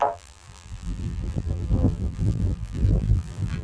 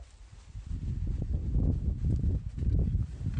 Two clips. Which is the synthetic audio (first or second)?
first